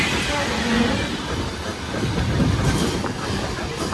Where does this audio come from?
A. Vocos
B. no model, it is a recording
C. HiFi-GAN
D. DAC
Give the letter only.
B